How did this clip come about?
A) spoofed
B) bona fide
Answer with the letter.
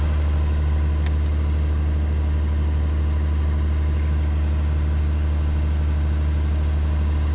B